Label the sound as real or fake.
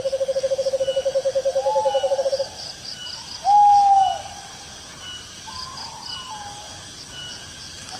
real